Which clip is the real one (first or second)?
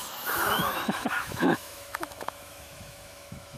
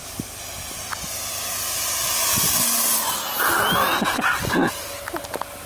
second